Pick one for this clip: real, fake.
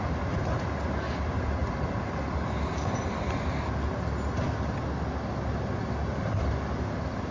real